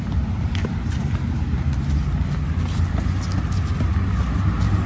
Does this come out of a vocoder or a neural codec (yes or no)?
no